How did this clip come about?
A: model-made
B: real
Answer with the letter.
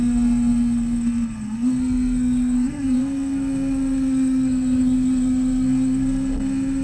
A